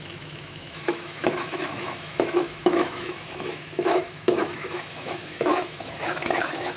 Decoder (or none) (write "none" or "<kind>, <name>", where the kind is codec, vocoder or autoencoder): autoencoder, DAC-VAE